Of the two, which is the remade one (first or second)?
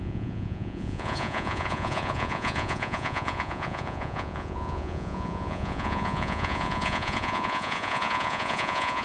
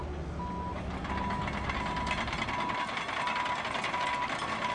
first